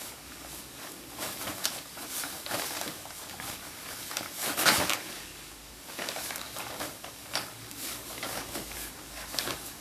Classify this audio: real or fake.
fake